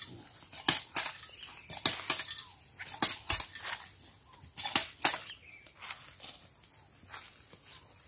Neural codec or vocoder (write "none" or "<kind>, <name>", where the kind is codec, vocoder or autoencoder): none